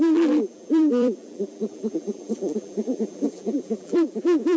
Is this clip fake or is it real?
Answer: fake